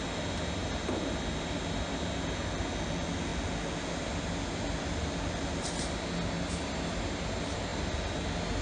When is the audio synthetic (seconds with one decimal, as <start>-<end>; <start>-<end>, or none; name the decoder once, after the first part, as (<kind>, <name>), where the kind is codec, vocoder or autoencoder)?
none